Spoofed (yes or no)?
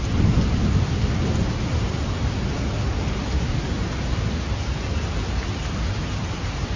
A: yes